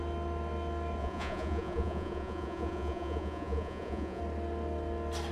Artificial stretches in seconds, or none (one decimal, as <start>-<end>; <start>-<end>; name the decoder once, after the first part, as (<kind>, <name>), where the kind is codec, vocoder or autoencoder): 1.0-4.2 (vocoder, Vocos)